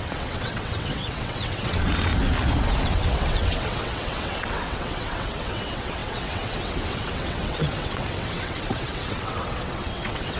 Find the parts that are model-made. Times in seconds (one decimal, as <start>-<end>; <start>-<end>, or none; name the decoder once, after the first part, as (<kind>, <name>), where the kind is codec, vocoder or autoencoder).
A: 0.0-2.1 (vocoder, WaveNeXt); 2.8-10.4